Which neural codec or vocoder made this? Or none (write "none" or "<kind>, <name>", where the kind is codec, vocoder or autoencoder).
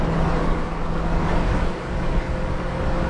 codec, DAC